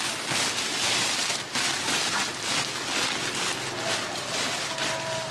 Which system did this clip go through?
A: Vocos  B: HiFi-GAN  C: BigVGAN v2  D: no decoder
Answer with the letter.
D